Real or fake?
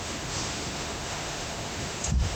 fake